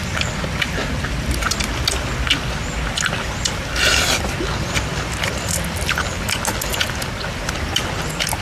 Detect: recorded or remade recorded